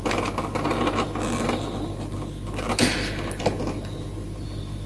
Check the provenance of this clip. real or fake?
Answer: real